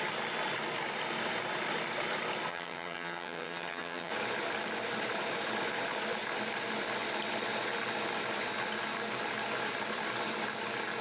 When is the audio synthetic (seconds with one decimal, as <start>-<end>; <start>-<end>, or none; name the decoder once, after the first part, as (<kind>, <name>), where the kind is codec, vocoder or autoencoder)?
2.5-4.1 (vocoder, HiFi-GAN)